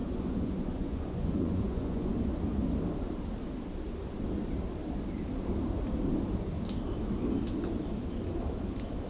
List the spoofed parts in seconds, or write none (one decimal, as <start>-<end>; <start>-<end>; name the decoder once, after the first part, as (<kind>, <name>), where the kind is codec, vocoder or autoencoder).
0.0-2.1 (vocoder, Vocos)

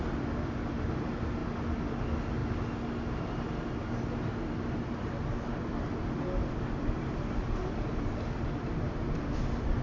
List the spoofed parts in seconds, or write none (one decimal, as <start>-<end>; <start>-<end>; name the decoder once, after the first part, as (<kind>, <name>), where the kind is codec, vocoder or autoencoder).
none

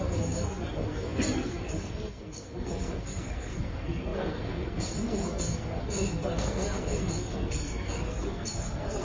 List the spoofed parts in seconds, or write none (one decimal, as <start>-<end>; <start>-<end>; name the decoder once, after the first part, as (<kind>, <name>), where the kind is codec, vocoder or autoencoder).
0.0-9.0 (codec, SNAC)

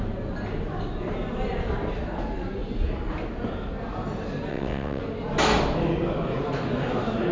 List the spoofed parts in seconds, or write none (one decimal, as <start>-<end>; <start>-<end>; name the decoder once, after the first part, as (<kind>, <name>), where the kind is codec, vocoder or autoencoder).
4.5-5.0 (vocoder, WaveNeXt)

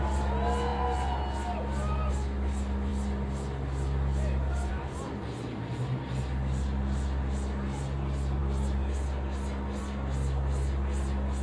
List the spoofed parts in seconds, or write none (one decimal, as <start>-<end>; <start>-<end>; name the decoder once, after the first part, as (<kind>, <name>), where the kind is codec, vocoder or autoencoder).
none

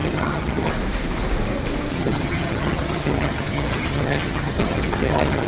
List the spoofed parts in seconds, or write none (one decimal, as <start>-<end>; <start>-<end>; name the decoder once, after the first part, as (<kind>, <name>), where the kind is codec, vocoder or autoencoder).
0.0-0.7 (vocoder, HiFi-GAN); 1.9-5.5

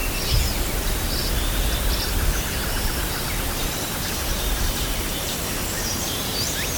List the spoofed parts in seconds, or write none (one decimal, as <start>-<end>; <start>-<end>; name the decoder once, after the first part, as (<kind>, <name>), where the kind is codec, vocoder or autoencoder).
4.1-6.8 (vocoder, BigVGAN v2)

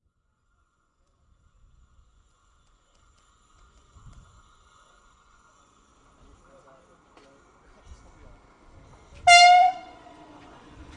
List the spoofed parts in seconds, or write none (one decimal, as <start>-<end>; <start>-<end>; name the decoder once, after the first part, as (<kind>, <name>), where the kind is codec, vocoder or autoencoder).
0.0-5.9 (vocoder, Vocos); 9.6-11.0